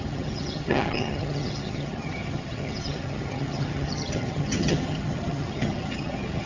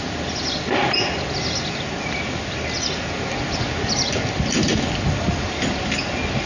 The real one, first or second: second